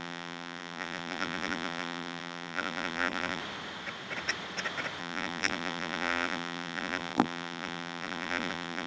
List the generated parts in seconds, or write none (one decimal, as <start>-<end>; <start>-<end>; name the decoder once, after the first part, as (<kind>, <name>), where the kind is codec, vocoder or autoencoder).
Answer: 0.0-3.4 (vocoder, BigVGAN v2); 5.0-8.9